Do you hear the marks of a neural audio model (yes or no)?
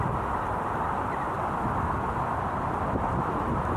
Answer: no